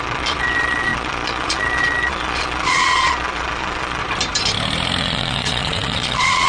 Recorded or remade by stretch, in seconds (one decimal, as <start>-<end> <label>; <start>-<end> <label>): 0.0-4.0 remade; 4.0-5.0 recorded; 5.0-6.5 remade